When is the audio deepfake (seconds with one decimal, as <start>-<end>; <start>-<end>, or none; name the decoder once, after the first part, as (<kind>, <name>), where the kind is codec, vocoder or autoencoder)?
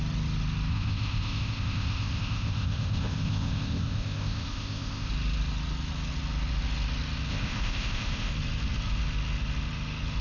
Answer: 0.7-5.1 (codec, ZipCodec); 7.3-8.3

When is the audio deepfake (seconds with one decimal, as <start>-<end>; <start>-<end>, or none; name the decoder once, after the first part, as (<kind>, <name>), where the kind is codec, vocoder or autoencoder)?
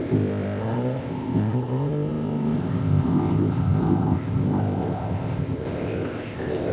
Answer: 0.0-6.7 (codec, ZipCodec)